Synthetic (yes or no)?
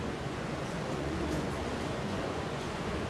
yes